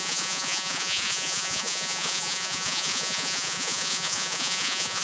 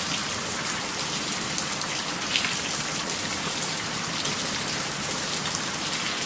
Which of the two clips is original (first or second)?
second